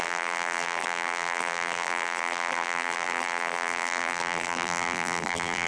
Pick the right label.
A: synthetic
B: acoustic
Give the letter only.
A